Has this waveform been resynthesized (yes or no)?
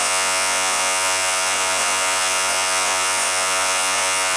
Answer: yes